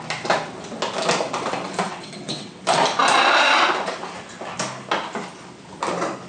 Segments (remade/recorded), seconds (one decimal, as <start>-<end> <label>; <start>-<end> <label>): 0.0-1.9 recorded; 1.9-2.6 remade; 2.6-6.3 recorded